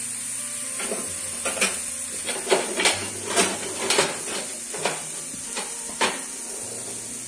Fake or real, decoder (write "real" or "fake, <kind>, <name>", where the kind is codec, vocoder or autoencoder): real